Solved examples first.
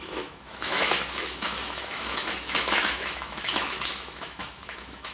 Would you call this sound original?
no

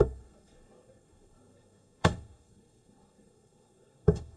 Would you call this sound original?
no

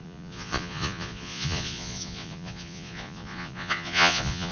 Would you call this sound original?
no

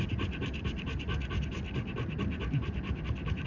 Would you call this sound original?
yes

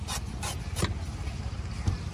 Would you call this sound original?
yes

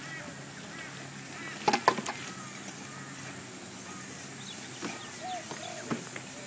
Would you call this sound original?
yes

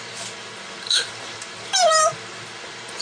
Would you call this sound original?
no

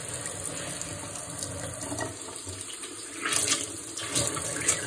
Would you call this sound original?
yes